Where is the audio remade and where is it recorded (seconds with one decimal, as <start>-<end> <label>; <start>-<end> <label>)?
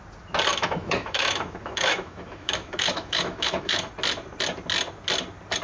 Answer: 0.0-0.5 recorded; 0.5-3.9 remade; 3.9-5.6 recorded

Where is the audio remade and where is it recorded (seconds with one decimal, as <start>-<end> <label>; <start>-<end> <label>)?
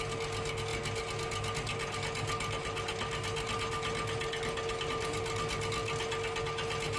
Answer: 0.0-7.0 recorded